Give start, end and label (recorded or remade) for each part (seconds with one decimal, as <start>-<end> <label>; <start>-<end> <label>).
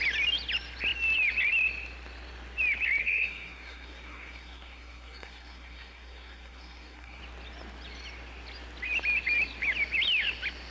0.0-3.0 recorded; 3.0-7.2 remade; 7.2-10.7 recorded